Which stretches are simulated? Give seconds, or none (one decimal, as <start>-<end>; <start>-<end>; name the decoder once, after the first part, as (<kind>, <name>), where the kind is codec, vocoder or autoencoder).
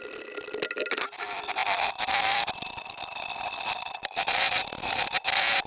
none